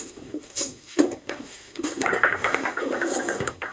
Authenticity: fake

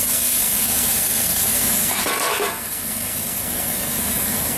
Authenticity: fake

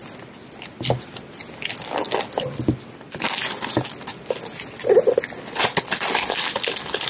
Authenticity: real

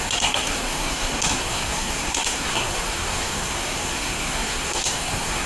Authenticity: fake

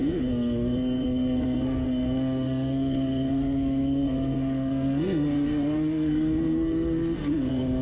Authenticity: fake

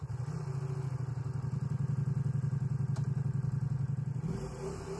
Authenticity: real